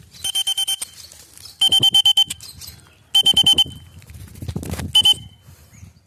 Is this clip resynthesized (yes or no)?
no